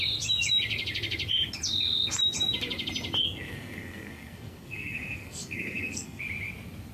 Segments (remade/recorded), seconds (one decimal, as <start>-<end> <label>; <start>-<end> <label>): 0.0-3.2 recorded; 3.2-6.2 remade; 6.2-6.9 recorded